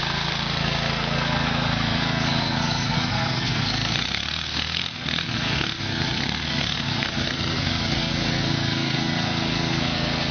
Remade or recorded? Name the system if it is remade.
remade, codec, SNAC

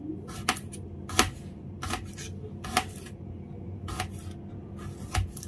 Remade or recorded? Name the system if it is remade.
recorded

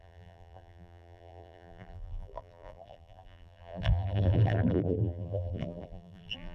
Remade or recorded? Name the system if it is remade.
remade, vocoder, BigVGAN v2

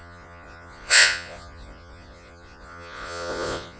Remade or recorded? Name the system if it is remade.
remade, vocoder, Vocos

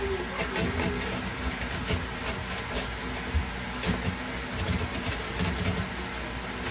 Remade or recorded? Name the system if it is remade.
recorded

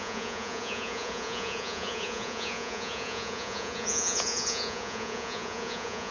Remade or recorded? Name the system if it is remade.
remade, vocoder, Vocos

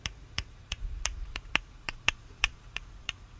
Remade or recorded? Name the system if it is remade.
remade, vocoder, Vocos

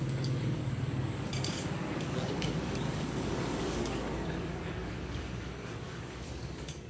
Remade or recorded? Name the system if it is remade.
remade, codec, DAC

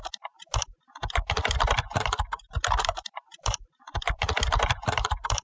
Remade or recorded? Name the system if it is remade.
remade, vocoder, BigVGAN v2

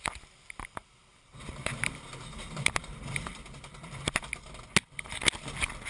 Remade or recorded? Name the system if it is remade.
recorded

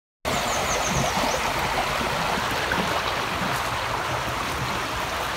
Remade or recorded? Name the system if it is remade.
recorded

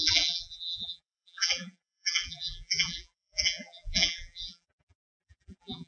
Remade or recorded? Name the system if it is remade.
remade, vocoder, BigVGAN v2